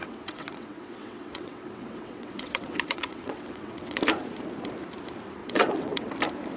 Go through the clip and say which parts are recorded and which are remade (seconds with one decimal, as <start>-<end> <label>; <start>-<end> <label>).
0.0-4.0 remade; 4.0-5.4 recorded; 5.4-6.1 remade; 6.1-6.6 recorded